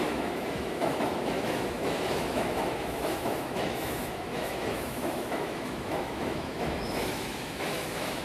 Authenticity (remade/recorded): remade